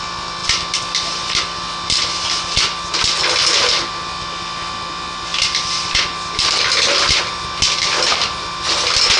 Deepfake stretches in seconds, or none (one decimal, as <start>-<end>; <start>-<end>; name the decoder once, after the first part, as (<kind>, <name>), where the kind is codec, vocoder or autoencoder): none